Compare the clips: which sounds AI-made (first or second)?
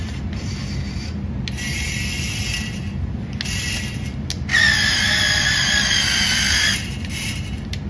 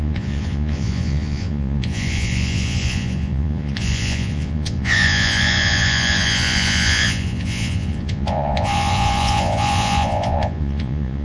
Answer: second